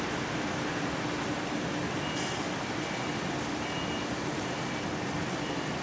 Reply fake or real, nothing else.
real